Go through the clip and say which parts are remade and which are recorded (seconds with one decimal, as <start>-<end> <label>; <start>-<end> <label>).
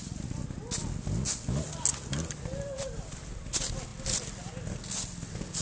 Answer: 0.0-5.6 recorded